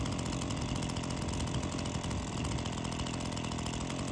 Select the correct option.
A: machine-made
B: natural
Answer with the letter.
B